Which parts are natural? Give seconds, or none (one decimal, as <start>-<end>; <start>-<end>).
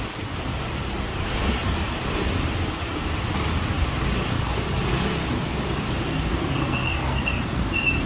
0.0-6.3; 7.6-8.1